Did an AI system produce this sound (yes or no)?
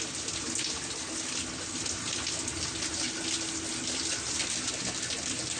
no